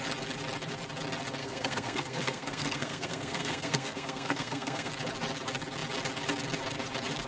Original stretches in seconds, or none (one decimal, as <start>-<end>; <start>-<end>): 0.0-1.4; 4.9-7.3